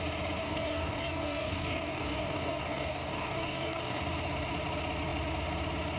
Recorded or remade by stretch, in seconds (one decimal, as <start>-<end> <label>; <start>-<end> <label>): 0.0-0.4 recorded; 0.4-4.0 remade; 4.0-6.0 recorded